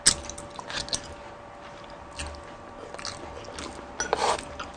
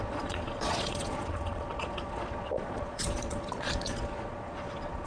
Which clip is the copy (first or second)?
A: second